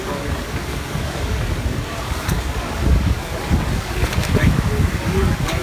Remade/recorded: remade